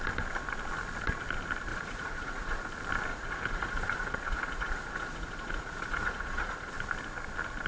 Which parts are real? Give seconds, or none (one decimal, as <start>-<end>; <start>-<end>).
0.0-1.7; 2.6-3.1; 6.7-7.7